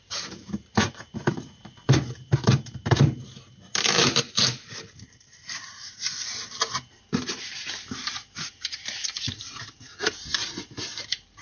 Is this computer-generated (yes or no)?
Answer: yes